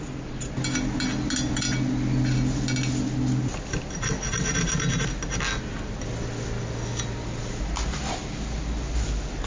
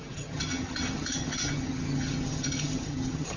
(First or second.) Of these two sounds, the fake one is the second